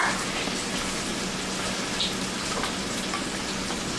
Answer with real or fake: real